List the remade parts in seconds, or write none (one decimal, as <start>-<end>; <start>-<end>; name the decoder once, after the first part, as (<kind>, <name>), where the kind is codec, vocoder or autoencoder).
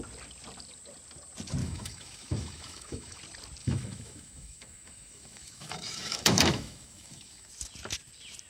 1.6-3.2 (autoencoder, DAC-VAE); 3.6-7.5